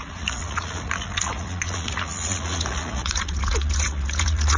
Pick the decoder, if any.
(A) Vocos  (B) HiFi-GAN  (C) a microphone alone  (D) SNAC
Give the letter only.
A